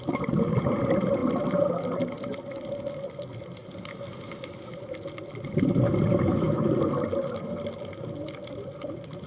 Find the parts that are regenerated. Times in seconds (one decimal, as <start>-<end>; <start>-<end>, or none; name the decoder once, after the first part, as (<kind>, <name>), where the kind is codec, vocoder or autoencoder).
6.1-6.7 (autoencoder, DAC-VAE)